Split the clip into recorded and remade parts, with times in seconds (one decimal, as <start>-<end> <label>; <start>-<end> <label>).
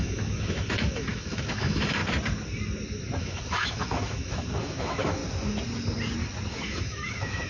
0.0-2.0 remade; 2.0-3.2 recorded; 3.2-5.2 remade; 5.2-6.5 recorded; 6.5-7.5 remade